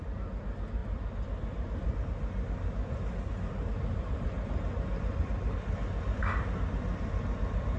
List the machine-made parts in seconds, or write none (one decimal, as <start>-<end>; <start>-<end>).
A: none